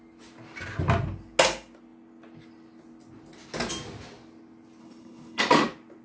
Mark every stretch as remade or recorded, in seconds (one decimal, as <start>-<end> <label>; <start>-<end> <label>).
0.0-4.8 recorded; 4.8-5.4 remade; 5.4-6.0 recorded

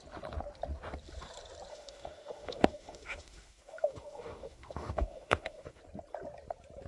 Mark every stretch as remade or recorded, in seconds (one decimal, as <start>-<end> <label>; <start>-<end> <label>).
0.0-1.7 recorded; 1.7-5.8 remade; 5.8-6.9 recorded

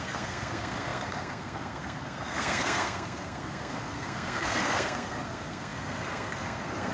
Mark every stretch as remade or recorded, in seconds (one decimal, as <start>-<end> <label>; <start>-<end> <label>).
0.0-6.9 remade

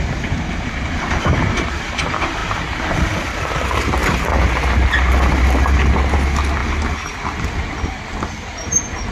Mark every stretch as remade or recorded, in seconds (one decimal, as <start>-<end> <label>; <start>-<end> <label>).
0.0-9.1 recorded